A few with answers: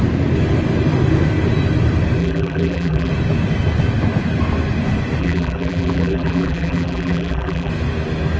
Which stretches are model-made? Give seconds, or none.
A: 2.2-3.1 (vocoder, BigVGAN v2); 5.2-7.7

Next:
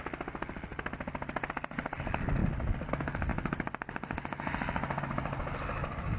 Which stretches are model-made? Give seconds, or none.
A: 2.4-2.9 (vocoder, BigVGAN v2)

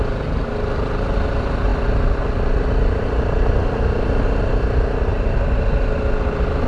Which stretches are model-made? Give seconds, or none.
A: none

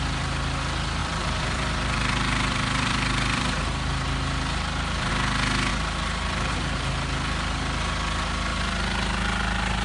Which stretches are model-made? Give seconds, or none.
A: 1.0-5.1 (vocoder, BigVGAN v2); 5.7-6.5

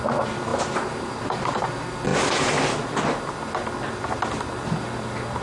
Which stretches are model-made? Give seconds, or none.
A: 0.5-1.6 (vocoder, BigVGAN v2)